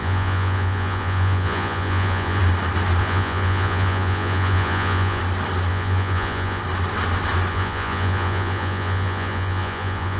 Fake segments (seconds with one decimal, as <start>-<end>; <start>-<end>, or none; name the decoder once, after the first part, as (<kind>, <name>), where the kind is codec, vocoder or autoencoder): 0.0-2.4 (vocoder, Vocos); 3.0-5.2; 5.7-6.6; 7.5-10.2